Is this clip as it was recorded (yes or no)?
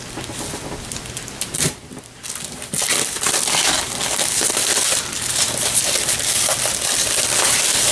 yes